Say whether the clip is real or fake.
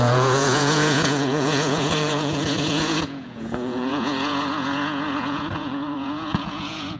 fake